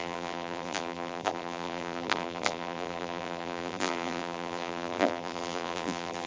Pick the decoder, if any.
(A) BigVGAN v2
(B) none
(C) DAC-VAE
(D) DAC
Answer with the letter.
A